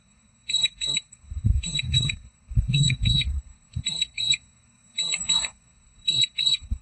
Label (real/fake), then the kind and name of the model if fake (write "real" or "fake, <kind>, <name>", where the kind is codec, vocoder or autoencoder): fake, codec, SNAC